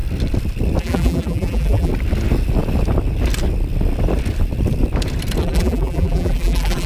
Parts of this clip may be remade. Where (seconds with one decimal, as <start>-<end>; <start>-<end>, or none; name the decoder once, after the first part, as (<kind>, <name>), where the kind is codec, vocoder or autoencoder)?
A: 0.8-1.9 (vocoder, BigVGAN v2); 5.4-6.9